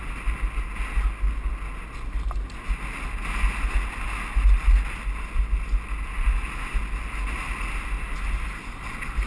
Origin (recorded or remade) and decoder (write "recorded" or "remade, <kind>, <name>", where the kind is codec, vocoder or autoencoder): recorded